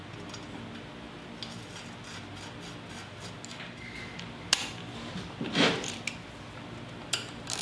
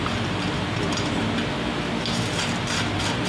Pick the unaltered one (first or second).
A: first